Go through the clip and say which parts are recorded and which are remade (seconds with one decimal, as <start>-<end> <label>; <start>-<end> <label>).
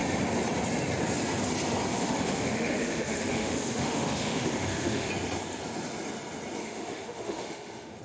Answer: 0.0-1.9 recorded; 1.9-5.1 remade; 5.1-6.6 recorded; 6.6-8.0 remade